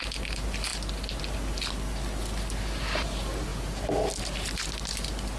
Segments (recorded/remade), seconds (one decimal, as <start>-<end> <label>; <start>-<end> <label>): 0.0-5.4 recorded